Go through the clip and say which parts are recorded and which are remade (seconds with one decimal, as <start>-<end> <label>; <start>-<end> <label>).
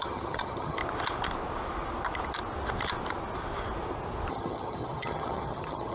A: 0.0-0.8 remade; 0.8-4.3 recorded; 4.3-5.9 remade